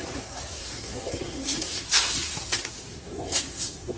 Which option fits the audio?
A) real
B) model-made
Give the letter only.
B